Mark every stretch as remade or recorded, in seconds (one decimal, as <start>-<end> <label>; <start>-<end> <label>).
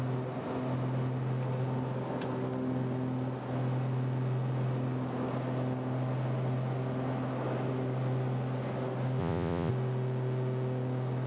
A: 0.0-9.2 recorded; 9.2-9.7 remade; 9.7-11.3 recorded